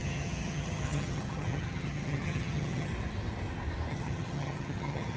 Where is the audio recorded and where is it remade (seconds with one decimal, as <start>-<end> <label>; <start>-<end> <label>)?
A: 0.0-2.9 remade; 2.9-3.9 recorded; 3.9-5.2 remade